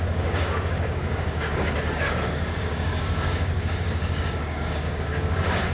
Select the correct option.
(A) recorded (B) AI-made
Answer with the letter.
B